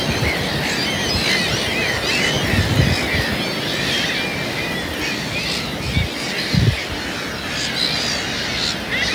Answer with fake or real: real